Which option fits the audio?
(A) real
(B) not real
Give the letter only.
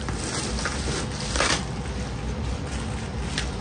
A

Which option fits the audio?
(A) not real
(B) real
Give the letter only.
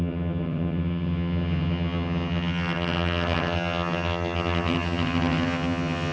A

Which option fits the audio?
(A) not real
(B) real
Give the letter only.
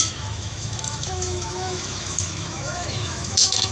A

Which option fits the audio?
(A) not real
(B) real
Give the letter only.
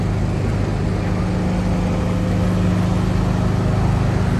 B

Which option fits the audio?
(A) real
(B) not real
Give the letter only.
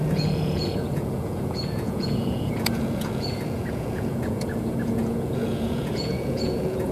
B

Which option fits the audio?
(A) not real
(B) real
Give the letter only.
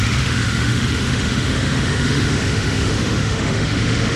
A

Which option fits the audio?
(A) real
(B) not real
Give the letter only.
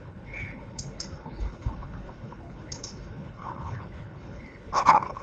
B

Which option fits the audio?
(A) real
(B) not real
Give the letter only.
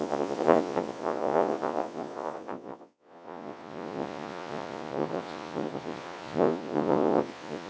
B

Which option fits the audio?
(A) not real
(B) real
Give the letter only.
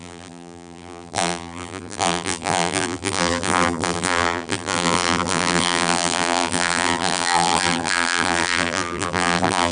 A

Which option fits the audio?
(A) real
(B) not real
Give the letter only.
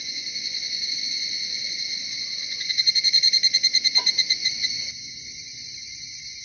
B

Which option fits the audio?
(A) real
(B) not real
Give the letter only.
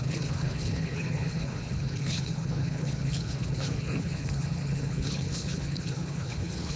B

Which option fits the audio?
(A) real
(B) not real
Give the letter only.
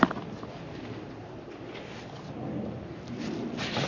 A